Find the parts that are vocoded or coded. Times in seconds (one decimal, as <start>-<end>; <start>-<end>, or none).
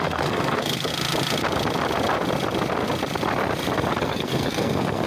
0.0-0.9; 4.0-5.1